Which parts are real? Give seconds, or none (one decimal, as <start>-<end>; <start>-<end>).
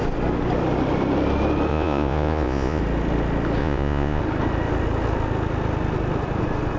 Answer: 0.0-1.7; 2.8-3.6; 4.2-6.8